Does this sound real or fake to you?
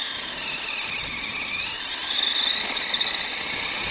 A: real